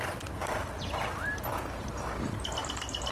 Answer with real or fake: real